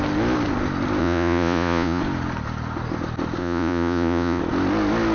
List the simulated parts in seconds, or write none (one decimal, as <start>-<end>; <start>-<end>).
1.0-2.0; 3.4-4.4

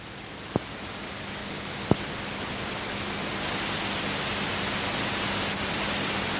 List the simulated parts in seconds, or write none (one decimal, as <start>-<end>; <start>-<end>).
none

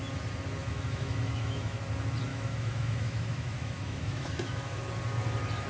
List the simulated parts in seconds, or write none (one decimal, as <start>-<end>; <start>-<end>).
0.6-1.8; 2.3-4.8

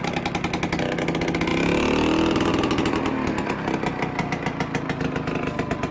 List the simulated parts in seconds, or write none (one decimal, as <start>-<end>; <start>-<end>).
none

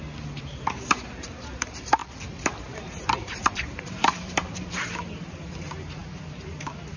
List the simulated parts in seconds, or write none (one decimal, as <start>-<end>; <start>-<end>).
2.0-5.1

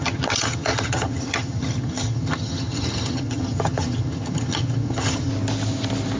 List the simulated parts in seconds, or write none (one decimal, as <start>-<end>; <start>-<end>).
0.0-5.3